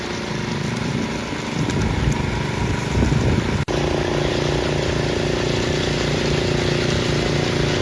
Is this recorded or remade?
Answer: recorded